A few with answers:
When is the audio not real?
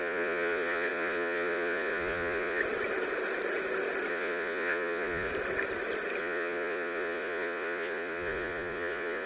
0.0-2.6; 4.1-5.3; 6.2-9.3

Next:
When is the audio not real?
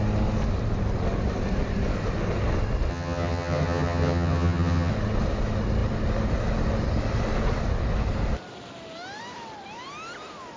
2.9-4.9